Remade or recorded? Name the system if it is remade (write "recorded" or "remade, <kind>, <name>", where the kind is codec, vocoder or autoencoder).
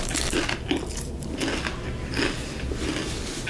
recorded